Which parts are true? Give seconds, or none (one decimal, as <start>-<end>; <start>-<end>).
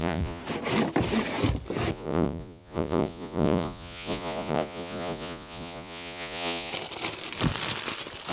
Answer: 0.4-1.9; 6.7-8.3